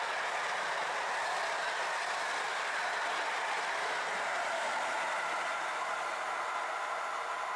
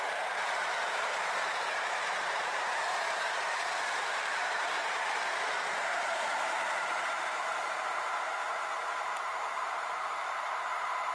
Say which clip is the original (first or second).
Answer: first